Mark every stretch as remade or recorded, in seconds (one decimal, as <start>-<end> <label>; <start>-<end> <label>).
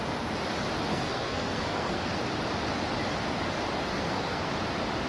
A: 0.0-0.9 recorded; 0.9-2.2 remade; 2.2-3.9 recorded; 3.9-4.5 remade; 4.5-5.1 recorded